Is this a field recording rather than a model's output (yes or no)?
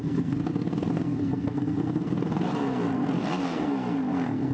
no